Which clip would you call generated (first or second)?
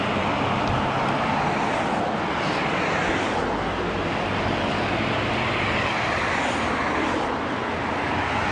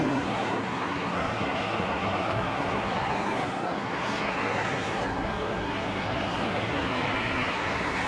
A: second